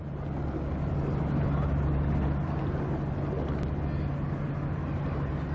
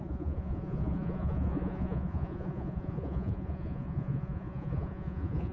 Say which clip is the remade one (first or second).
second